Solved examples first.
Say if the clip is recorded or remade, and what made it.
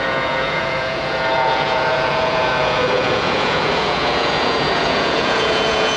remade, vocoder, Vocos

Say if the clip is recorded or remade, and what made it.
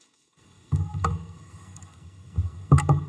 remade, codec, SNAC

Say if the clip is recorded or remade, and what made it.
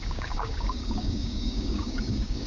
remade, codec, DAC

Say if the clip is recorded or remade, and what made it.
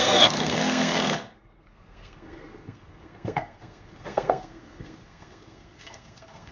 remade, codec, SNAC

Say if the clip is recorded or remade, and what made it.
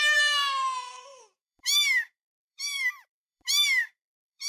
remade, vocoder, BigVGAN v2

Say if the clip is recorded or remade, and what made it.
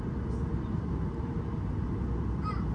recorded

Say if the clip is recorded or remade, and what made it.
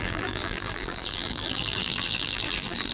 remade, vocoder, BigVGAN v2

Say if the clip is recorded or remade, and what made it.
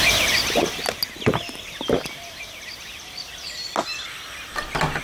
recorded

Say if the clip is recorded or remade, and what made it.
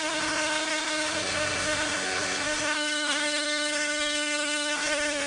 remade, codec, SNAC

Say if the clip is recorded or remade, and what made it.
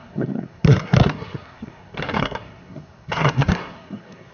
remade, codec, SNAC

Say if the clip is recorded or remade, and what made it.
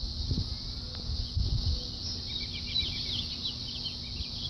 recorded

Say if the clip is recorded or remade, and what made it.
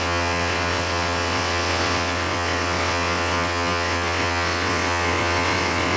remade, vocoder, WaveNeXt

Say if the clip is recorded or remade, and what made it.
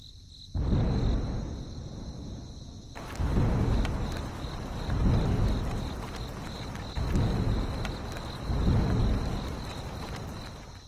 recorded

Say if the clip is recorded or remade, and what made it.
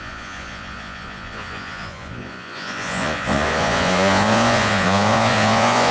remade, vocoder, Vocos